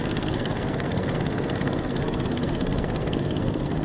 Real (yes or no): no